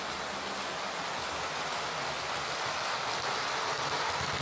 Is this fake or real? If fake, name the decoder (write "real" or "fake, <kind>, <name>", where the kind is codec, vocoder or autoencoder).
real